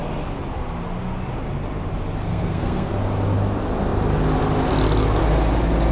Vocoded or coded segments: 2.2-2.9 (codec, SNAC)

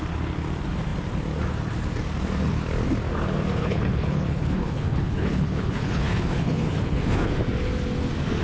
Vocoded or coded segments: 3.6-7.3 (codec, HILCodec)

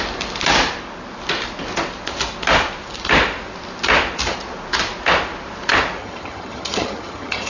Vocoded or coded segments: 6.0-7.5 (vocoder, HiFi-GAN)

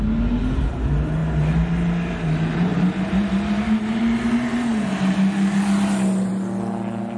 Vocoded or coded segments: 2.7-4.0 (vocoder, BigVGAN v2)

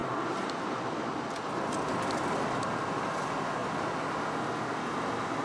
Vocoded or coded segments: 0.0-3.2 (vocoder, BigVGAN v2)

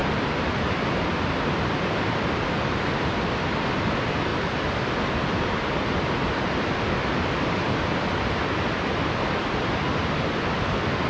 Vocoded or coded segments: none